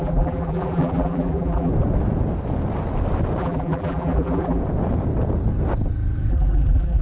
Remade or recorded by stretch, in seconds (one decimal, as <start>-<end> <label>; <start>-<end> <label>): 0.0-1.7 remade; 1.7-3.4 recorded; 3.4-4.6 remade; 4.6-6.3 recorded; 6.3-7.0 remade